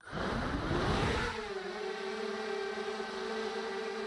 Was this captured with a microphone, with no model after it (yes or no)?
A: no